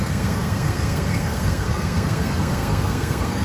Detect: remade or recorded remade